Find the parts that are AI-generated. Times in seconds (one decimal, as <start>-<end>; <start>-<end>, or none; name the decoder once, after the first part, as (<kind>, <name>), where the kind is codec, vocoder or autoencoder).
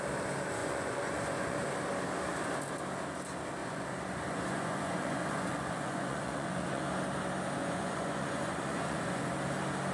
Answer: 0.6-1.6 (vocoder, Vocos); 3.6-6.8; 7.6-9.3